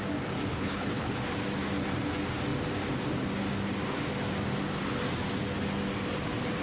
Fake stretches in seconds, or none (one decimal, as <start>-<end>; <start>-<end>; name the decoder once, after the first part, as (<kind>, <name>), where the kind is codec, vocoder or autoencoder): 0.5-1.2 (codec, HILCodec)